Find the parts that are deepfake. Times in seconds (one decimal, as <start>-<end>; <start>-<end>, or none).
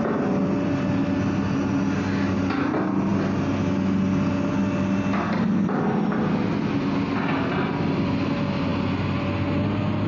none